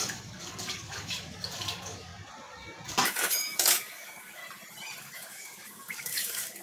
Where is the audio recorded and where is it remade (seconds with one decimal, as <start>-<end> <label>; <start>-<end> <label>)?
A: 0.0-2.1 remade; 2.1-2.9 recorded; 2.9-4.4 remade; 4.4-5.0 recorded; 5.0-6.6 remade